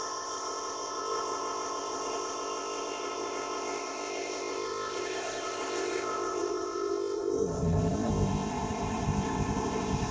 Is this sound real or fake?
fake